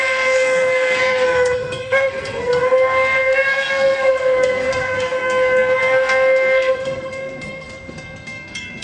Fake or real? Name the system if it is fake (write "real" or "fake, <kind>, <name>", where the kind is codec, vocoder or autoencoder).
fake, codec, SNAC